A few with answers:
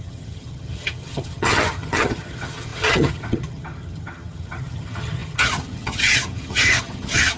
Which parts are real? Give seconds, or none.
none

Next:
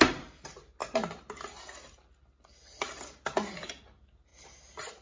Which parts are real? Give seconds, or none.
0.0-5.0

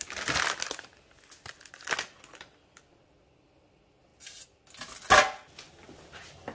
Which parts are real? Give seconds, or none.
0.0-6.5

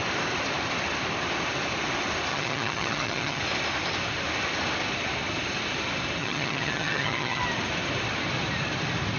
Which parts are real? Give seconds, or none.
0.0-2.3; 3.4-6.2; 7.4-9.2

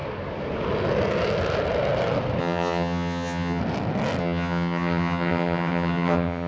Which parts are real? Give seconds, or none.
0.0-2.4; 3.6-4.2

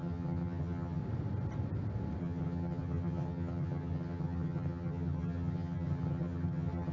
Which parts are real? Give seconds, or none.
1.0-2.2

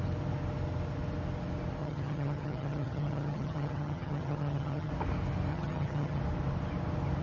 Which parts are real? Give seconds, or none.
0.0-1.8; 4.9-5.5; 6.2-7.2

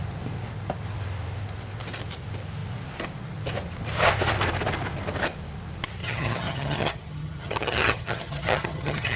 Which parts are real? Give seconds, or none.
0.0-6.0